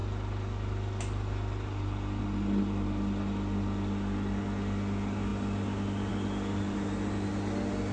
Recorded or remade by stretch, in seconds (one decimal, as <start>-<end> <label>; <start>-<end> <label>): 0.0-7.9 recorded